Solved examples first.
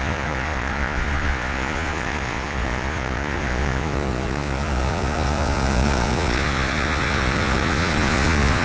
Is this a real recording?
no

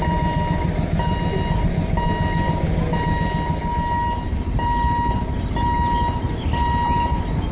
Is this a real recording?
yes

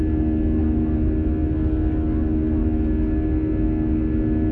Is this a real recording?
yes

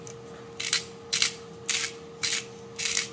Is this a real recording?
yes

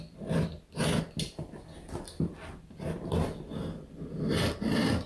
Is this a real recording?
yes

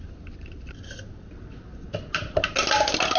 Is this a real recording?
yes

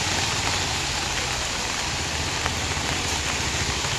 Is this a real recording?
yes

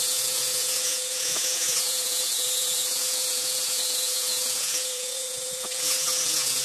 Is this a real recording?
no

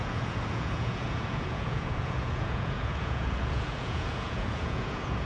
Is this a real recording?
no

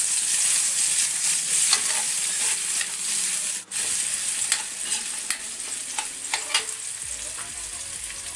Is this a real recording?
yes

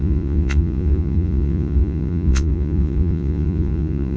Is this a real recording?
no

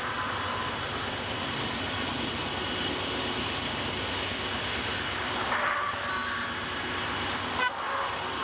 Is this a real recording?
yes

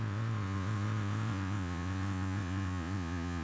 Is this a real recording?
no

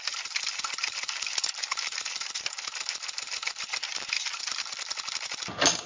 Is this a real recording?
yes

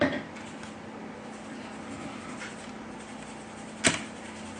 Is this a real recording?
yes